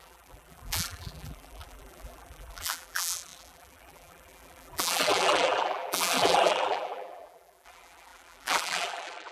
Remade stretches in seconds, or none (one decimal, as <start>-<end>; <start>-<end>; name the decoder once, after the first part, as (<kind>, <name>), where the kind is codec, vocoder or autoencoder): 0.0-9.3 (vocoder, BigVGAN v2)